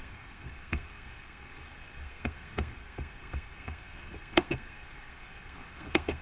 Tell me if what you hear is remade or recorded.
remade